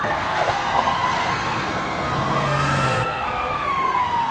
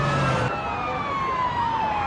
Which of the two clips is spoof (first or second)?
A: first